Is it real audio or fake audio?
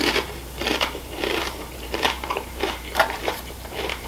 fake